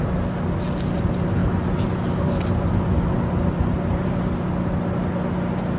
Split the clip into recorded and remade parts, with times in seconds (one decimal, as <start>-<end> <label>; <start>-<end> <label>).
0.0-5.8 recorded